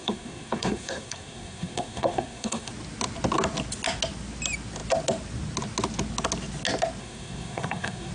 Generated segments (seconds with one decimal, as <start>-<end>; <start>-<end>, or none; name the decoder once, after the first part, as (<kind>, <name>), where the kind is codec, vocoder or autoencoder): 0.0-2.7 (codec, SNAC); 7.0-8.1